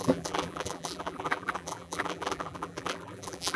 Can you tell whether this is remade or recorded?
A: remade